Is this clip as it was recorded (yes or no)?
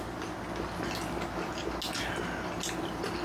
yes